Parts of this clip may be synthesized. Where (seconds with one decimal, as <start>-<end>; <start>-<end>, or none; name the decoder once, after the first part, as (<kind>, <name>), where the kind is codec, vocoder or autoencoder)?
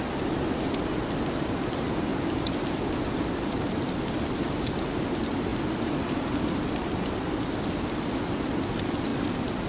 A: 2.1-2.8 (vocoder, BigVGAN v2); 5.5-6.1